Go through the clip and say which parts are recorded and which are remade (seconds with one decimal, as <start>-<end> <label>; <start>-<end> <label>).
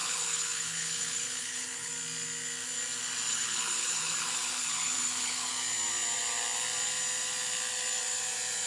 0.0-1.9 remade; 1.9-3.3 recorded; 3.3-5.5 remade; 5.5-8.7 recorded